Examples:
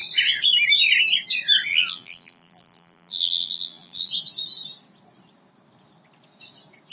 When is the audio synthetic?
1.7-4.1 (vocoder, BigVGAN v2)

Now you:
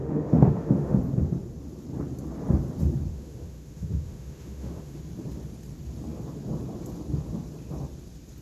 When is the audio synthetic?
0.0-1.0 (autoencoder, DAC-VAE); 3.1-5.0

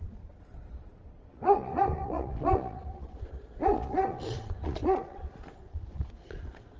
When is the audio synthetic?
0.0-6.8 (vocoder, Vocos)

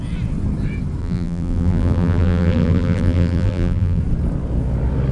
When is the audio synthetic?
1.0-4.0 (vocoder, BigVGAN v2)